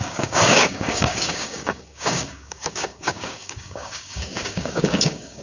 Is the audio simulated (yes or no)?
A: yes